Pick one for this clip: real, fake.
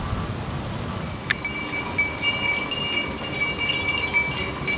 real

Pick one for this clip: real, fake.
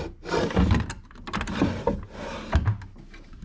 real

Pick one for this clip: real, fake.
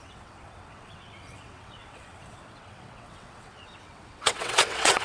fake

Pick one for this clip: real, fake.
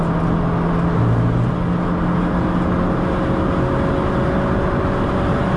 real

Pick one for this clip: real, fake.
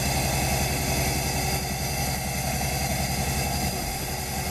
real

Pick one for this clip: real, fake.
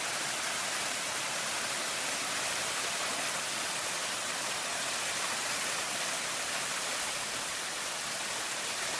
real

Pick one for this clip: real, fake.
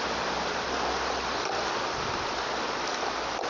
real